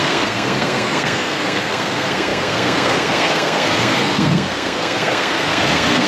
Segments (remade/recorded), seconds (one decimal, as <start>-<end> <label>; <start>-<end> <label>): 0.0-6.1 remade